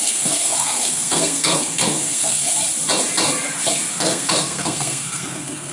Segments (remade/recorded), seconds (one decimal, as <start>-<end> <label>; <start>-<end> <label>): 0.0-2.5 remade; 2.5-3.9 recorded; 3.9-5.7 remade